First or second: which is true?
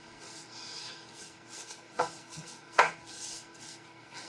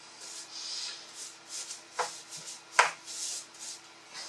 second